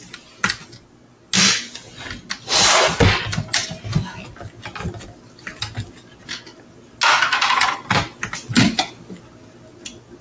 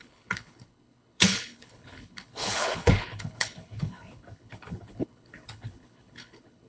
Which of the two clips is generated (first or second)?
second